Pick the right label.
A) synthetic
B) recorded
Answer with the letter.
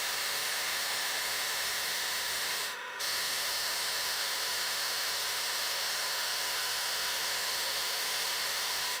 A